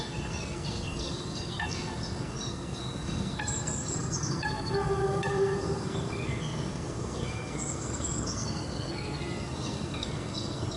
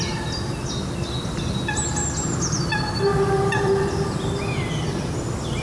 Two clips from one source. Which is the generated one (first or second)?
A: first